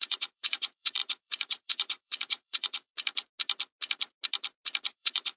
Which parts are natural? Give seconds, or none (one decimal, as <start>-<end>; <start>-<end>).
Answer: 2.9-4.9

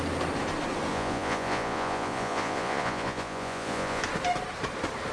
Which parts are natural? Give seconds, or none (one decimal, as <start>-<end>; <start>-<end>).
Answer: 0.0-0.9; 4.0-5.1

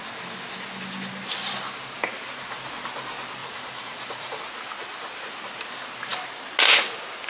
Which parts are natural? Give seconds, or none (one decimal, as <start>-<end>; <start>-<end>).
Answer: 0.0-3.4; 4.4-7.3

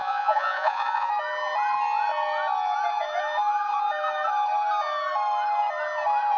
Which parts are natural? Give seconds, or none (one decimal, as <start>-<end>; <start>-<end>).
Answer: 1.1-6.4

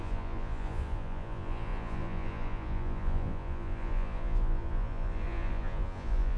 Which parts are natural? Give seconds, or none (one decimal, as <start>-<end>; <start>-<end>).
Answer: none

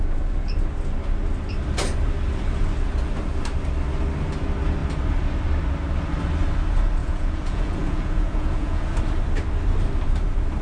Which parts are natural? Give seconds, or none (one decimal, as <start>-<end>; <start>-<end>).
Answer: 0.0-7.0; 9.0-10.6